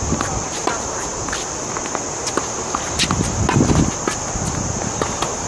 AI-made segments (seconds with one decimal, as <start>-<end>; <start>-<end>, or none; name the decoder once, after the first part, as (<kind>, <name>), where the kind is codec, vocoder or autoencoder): none